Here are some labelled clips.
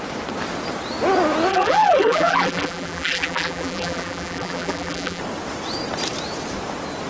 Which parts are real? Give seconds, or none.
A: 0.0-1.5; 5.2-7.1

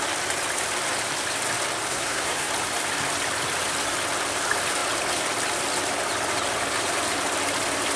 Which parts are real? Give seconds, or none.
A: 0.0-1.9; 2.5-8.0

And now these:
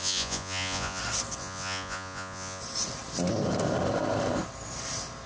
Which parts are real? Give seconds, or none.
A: 1.0-1.4; 2.6-5.3

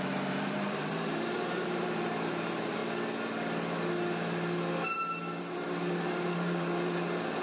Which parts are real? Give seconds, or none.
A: 2.8-5.4

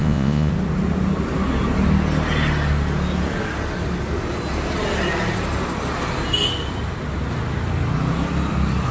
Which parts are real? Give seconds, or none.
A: 0.5-8.9